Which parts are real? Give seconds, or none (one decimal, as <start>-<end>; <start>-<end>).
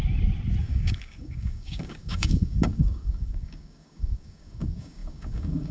0.0-0.6